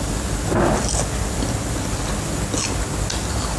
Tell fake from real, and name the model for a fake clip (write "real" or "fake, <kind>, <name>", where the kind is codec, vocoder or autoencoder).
real